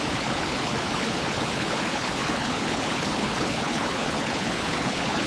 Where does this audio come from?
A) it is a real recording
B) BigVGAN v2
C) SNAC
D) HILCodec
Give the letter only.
D